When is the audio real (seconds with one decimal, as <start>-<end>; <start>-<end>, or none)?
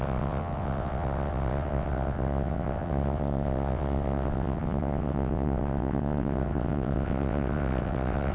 none